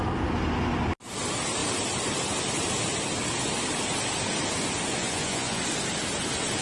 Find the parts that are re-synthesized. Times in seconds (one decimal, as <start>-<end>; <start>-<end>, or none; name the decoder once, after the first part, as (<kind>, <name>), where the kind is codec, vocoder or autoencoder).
5.0-5.6 (vocoder, Vocos)